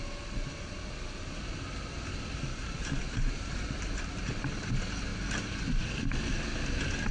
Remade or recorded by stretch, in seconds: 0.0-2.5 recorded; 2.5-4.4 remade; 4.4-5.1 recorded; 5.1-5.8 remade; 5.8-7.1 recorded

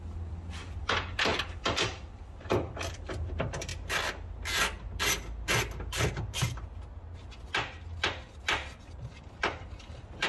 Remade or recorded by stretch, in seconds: 0.0-3.7 remade; 3.7-8.8 recorded; 8.8-10.3 remade

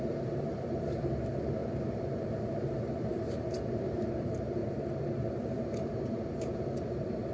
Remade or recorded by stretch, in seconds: 0.0-4.6 remade; 4.6-5.3 recorded; 5.3-7.3 remade

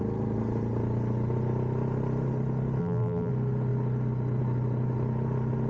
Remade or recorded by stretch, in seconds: 0.0-2.8 recorded; 2.8-3.3 remade; 3.3-5.7 recorded

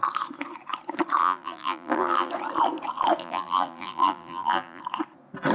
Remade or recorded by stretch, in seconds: 0.0-1.2 recorded; 1.2-2.3 remade; 2.3-3.2 recorded; 3.2-4.8 remade; 4.8-5.5 recorded

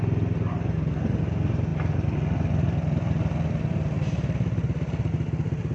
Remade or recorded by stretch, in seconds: 0.0-5.7 recorded